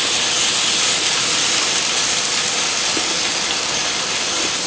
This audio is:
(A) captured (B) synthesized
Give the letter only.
A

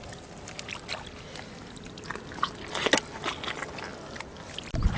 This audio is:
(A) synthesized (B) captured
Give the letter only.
B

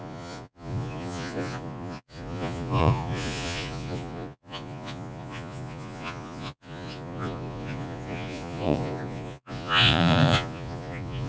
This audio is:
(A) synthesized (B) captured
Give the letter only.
A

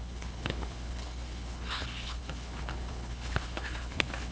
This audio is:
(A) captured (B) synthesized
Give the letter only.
B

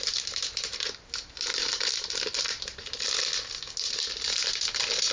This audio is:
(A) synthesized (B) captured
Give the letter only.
B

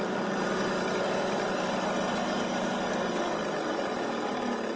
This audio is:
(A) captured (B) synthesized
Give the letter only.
A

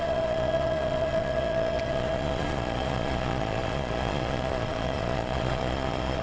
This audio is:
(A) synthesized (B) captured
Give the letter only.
A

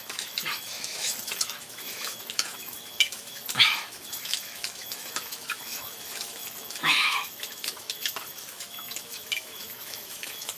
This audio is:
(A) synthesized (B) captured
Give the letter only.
A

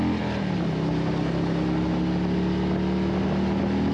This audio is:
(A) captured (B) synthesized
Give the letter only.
A